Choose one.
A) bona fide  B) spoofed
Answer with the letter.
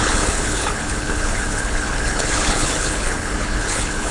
B